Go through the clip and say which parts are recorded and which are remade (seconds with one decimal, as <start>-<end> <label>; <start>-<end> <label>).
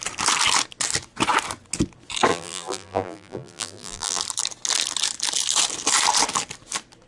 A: 0.0-2.3 recorded; 2.3-4.2 remade; 4.2-7.1 recorded